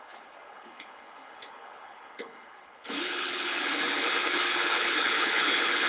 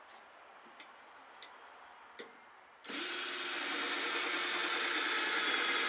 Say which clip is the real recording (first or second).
second